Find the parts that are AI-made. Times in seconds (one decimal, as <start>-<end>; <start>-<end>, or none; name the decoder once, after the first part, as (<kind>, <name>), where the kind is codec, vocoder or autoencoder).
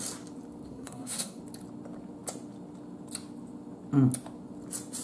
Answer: 0.7-1.4 (codec, SNAC)